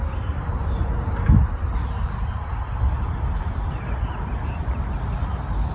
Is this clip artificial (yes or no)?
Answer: yes